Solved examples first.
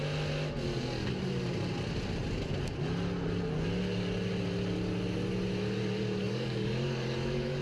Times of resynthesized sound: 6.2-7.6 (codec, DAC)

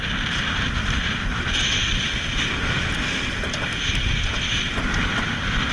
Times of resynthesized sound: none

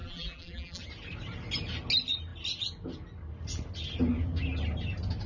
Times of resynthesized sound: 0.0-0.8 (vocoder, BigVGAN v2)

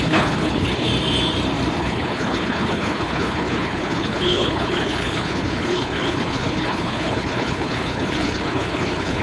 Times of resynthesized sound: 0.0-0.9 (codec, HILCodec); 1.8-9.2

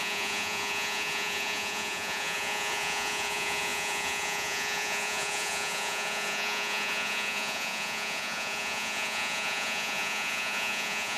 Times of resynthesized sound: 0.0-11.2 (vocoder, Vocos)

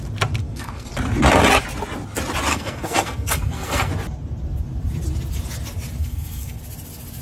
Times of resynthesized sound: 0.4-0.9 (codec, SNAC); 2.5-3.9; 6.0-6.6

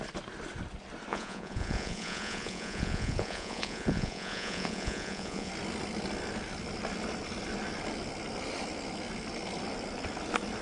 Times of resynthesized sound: 1.1-5.5 (vocoder, Vocos)